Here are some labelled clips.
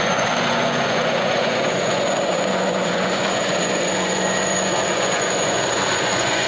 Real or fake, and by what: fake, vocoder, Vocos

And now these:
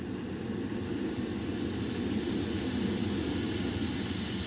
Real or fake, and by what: real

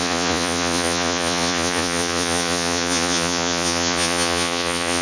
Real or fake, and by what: fake, vocoder, Vocos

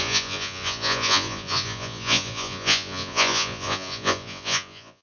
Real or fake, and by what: fake, vocoder, Vocos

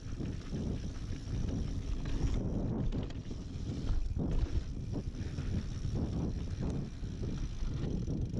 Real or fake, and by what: real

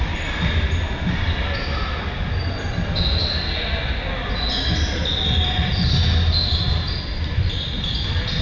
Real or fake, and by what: real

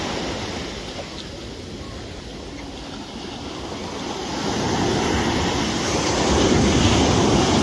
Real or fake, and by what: real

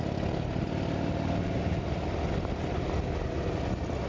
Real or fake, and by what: real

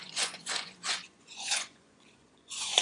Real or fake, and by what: fake, vocoder, Vocos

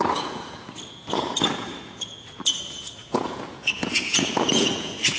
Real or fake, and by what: fake, vocoder, Vocos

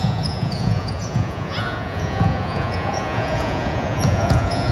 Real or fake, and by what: fake, vocoder, Vocos